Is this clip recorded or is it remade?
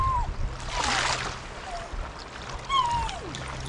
recorded